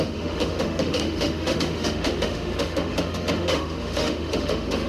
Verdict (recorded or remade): remade